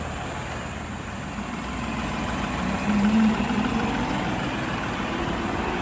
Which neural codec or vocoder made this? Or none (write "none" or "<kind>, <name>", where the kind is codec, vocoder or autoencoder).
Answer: vocoder, BigVGAN v2